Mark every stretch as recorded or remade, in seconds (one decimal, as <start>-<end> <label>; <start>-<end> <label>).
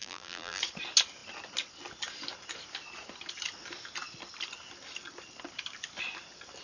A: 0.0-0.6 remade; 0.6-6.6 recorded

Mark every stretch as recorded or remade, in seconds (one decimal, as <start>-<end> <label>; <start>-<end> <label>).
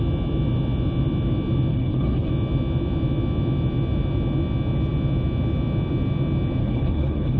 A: 0.0-1.7 recorded; 1.7-2.3 remade; 2.3-6.6 recorded; 6.6-7.4 remade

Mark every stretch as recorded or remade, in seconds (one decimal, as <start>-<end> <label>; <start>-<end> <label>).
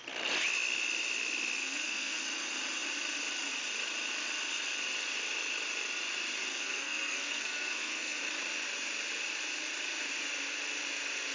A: 0.0-1.6 recorded; 1.6-2.2 remade; 2.2-6.5 recorded; 6.5-8.2 remade; 8.2-11.3 recorded